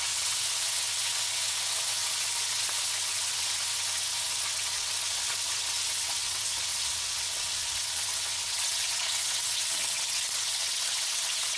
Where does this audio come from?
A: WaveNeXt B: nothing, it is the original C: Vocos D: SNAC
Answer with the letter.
A